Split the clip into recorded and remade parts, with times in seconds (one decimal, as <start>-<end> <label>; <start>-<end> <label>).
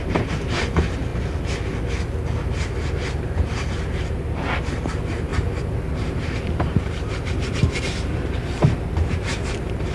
0.0-1.1 remade; 1.1-3.7 recorded; 3.7-5.3 remade; 5.3-5.9 recorded; 5.9-9.9 remade